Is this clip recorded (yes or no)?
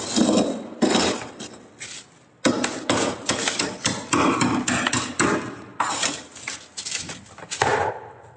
yes